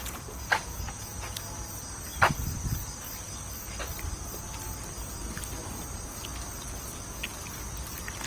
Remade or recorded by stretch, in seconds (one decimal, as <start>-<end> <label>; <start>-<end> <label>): 0.0-1.4 remade; 1.4-8.3 recorded